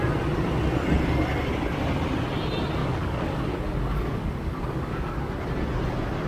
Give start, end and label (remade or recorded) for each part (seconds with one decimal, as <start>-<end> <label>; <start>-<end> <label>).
0.0-2.8 recorded; 2.8-5.3 remade; 5.3-6.3 recorded